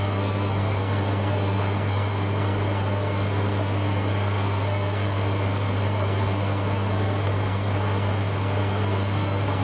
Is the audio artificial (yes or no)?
yes